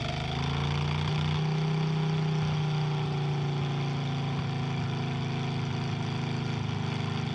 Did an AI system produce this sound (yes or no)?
no